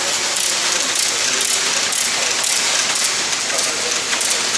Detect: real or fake real